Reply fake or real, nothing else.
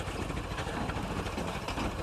real